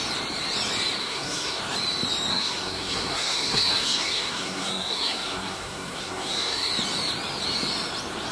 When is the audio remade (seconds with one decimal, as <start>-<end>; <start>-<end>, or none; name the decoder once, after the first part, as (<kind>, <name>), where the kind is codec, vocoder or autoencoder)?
1.0-1.6 (codec, SNAC); 2.3-6.7